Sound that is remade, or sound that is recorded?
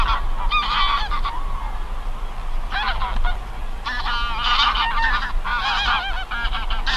recorded